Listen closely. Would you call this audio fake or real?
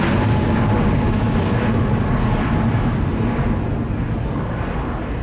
real